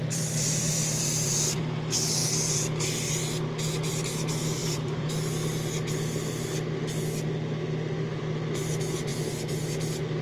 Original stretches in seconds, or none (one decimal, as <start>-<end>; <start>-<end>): 1.6-2.2; 2.9-4.6; 5.1-10.2